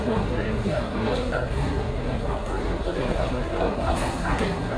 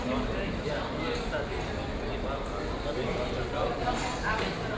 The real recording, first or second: second